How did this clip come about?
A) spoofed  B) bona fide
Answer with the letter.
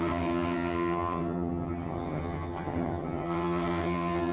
A